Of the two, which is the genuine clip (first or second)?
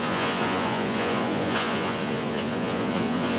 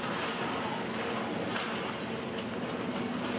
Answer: second